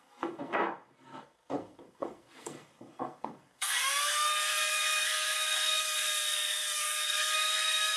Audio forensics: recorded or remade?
remade